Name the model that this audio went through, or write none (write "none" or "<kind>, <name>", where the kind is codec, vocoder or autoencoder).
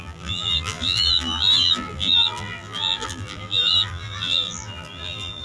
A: vocoder, BigVGAN v2